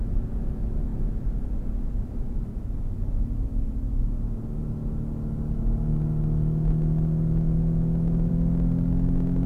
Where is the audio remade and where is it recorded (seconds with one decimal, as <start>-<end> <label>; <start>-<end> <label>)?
0.0-9.5 recorded